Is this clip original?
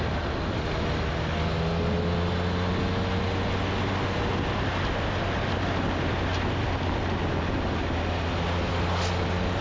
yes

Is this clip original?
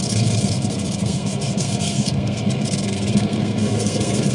no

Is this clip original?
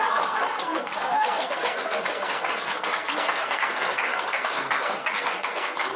no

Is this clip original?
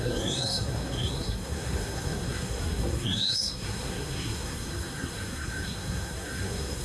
no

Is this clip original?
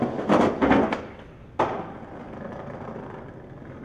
yes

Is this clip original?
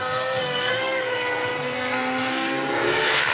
no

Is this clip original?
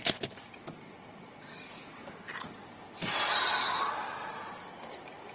yes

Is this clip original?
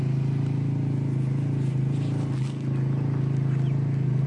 yes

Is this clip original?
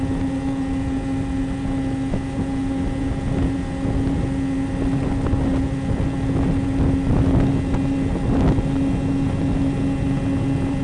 yes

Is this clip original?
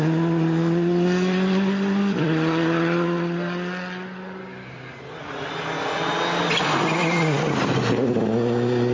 yes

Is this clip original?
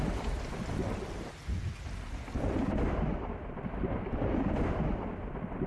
yes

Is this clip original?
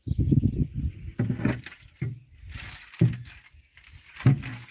yes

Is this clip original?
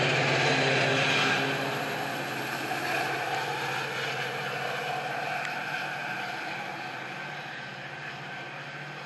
yes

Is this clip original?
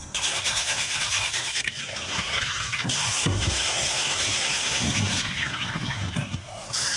no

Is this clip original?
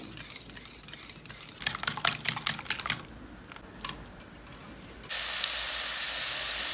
yes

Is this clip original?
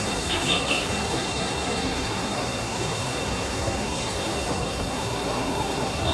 no